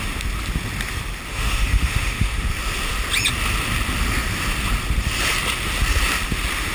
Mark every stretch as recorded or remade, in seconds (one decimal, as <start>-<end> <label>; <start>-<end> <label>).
0.0-1.3 recorded; 1.3-2.5 remade; 2.5-6.7 recorded